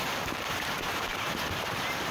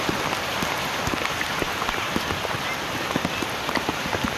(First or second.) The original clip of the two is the second